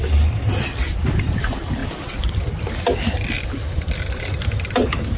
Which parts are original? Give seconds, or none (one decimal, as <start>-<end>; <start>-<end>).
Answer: 0.0-5.2